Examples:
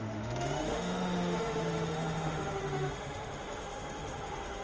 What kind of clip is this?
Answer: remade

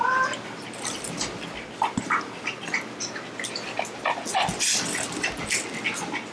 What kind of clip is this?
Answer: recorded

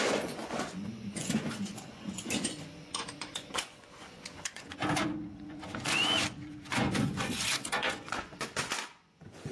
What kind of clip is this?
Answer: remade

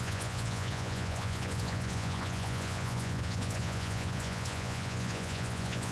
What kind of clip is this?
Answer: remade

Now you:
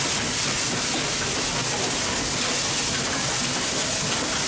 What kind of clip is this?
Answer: recorded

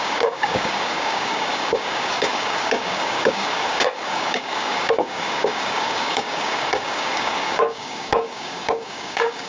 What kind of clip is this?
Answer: remade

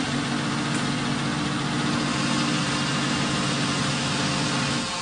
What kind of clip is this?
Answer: recorded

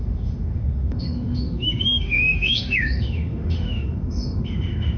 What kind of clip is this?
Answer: remade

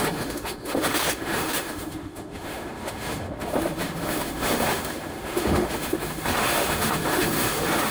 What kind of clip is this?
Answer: remade